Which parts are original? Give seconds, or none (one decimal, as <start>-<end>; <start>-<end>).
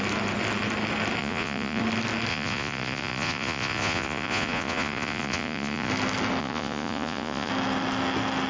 0.0-1.2; 1.8-2.3; 5.9-6.4; 7.5-8.5